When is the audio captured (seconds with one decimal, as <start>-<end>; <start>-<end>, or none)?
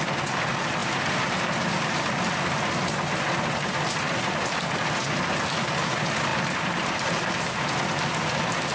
0.0-6.3; 7.5-8.7